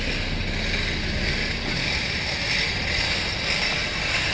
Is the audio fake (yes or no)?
no